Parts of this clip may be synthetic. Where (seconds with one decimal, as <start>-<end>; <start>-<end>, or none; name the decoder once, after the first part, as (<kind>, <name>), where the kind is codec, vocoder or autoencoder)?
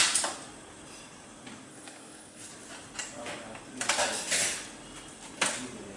1.7-2.5 (codec, SNAC)